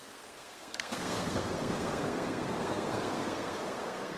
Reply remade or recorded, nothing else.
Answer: remade